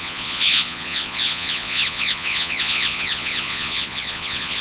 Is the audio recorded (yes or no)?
no